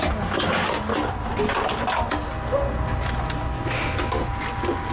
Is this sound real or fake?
real